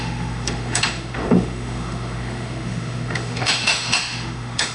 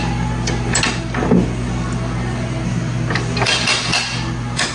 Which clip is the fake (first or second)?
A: first